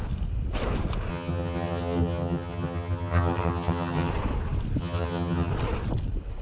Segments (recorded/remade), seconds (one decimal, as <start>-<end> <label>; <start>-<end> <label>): 0.0-1.1 recorded; 1.1-4.1 remade; 4.1-4.8 recorded; 4.8-5.5 remade; 5.5-6.4 recorded